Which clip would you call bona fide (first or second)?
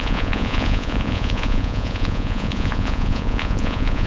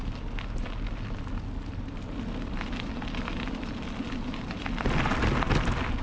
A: second